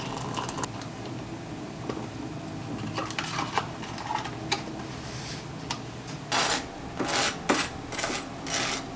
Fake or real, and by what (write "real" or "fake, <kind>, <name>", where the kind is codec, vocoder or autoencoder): real